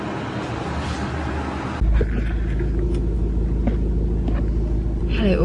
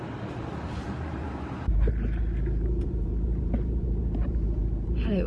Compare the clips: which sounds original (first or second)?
first